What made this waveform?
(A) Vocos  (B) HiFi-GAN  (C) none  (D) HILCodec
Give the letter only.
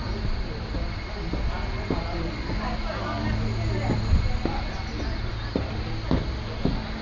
C